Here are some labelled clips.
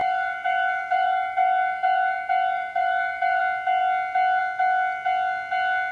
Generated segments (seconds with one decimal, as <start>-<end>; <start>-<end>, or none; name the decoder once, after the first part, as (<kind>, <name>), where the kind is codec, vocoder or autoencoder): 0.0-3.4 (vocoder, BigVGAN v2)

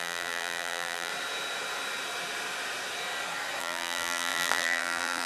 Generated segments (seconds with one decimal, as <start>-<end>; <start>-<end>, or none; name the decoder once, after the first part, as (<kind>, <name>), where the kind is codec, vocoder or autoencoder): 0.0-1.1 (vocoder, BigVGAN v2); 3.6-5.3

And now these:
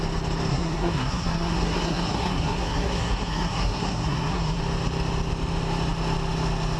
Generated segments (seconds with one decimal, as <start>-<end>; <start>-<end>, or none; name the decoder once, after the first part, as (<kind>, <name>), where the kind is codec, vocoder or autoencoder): 0.5-4.6 (codec, SNAC)

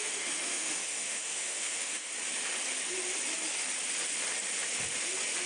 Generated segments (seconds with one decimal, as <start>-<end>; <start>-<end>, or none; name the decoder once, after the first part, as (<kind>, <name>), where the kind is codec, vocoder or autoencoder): 0.0-2.1 (autoencoder, DAC-VAE)

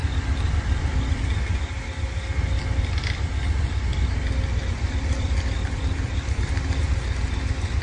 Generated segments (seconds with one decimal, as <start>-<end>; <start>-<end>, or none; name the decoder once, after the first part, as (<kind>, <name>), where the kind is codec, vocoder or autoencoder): 0.0-1.2 (vocoder, BigVGAN v2); 4.6-6.4

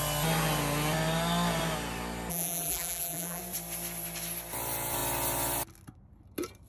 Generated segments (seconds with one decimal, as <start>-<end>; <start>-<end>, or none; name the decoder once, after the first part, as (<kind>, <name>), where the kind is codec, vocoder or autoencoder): 2.3-3.4 (vocoder, BigVGAN v2)